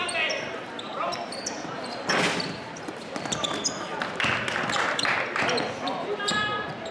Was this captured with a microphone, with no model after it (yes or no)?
yes